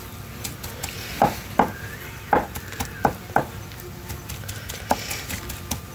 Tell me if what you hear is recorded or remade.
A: recorded